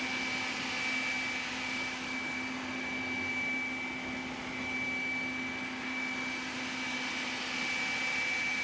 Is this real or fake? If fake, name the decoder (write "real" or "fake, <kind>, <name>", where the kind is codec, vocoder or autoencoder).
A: real